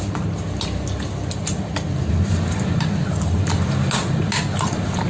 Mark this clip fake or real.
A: real